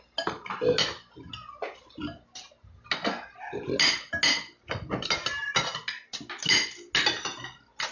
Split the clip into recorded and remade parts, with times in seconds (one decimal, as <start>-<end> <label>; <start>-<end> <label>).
0.0-7.9 recorded